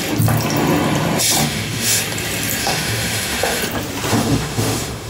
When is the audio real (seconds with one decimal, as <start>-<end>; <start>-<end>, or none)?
0.0-1.4; 2.0-2.6; 3.6-4.1